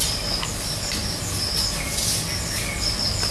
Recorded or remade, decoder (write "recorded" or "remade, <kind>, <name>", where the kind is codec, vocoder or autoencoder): recorded